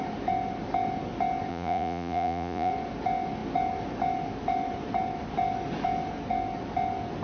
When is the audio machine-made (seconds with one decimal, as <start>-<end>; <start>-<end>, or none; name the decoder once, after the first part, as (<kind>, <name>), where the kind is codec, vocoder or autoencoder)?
1.5-2.7 (vocoder, Vocos)